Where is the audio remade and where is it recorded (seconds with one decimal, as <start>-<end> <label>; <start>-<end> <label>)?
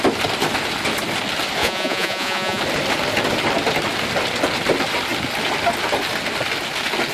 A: 0.0-1.6 recorded; 1.6-2.6 remade; 2.6-7.1 recorded